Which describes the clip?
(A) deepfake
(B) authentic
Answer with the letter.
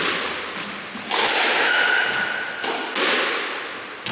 B